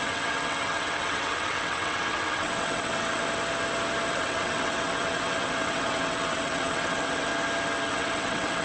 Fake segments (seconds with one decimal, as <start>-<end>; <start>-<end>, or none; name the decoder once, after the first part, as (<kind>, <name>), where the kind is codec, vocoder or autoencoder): 0.0-3.2 (vocoder, WaveNeXt); 4.1-7.3; 7.9-8.6